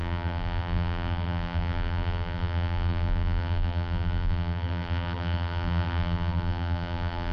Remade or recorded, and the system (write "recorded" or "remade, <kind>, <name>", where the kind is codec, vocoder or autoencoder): remade, vocoder, BigVGAN v2